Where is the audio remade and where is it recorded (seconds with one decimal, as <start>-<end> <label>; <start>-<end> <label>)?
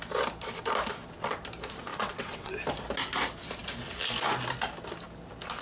0.0-1.9 recorded; 1.9-2.5 remade; 2.5-5.6 recorded